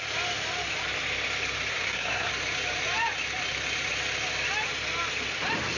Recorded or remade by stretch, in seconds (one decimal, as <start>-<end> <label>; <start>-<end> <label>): 0.0-1.7 recorded; 1.7-2.3 remade; 2.3-5.8 recorded